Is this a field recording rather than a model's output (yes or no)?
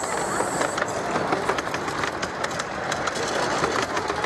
yes